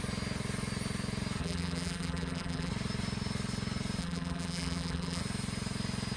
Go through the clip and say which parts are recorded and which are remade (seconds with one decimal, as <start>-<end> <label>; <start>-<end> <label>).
0.0-1.4 recorded; 1.4-2.7 remade; 2.7-4.0 recorded; 4.0-5.2 remade; 5.2-6.2 recorded